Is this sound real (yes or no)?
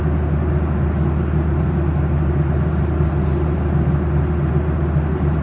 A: yes